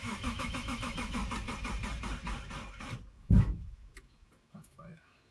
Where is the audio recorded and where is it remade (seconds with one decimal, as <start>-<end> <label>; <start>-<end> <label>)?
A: 0.0-1.2 remade; 1.2-3.1 recorded; 3.1-5.3 remade